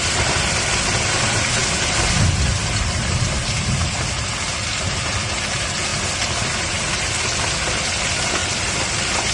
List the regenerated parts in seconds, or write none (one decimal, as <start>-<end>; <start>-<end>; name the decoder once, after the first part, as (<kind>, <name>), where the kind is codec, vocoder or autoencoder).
none